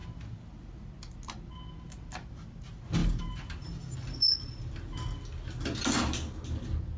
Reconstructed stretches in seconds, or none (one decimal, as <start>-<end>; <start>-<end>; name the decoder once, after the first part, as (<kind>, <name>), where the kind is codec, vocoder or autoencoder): 3.0-4.6 (vocoder, BigVGAN v2)